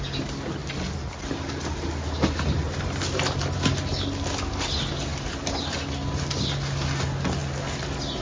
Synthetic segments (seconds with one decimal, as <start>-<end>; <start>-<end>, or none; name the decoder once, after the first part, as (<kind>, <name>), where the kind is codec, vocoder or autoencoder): none

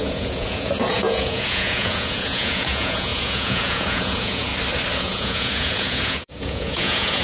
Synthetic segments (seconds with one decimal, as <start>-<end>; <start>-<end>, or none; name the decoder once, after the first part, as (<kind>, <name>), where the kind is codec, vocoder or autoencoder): 0.0-4.5 (vocoder, Vocos); 5.0-7.2

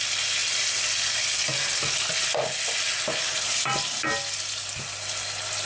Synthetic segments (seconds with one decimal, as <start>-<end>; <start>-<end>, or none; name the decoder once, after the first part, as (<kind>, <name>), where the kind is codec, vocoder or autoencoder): none

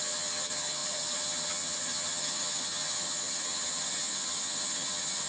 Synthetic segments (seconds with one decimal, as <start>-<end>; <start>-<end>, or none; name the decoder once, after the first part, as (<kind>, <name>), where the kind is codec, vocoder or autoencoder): 0.0-5.3 (vocoder, HiFi-GAN)